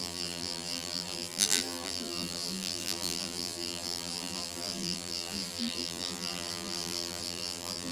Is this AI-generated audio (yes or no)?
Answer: yes